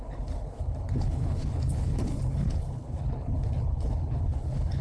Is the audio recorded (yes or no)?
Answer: no